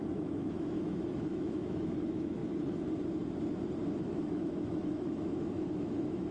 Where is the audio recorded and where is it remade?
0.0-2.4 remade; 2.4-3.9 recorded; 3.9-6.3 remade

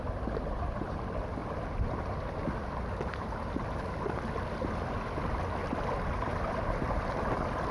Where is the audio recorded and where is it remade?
0.0-7.7 recorded

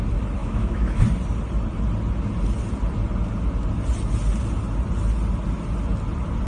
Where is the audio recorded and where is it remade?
0.0-0.4 recorded; 0.4-1.0 remade; 1.0-6.5 recorded